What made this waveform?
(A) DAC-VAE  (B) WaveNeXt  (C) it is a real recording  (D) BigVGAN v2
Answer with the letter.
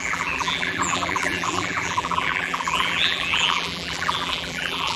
D